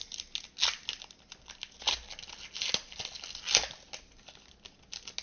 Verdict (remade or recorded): recorded